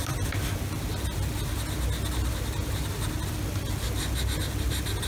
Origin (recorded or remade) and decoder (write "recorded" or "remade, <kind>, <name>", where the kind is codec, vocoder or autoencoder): recorded